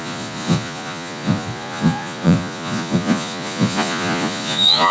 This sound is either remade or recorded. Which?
remade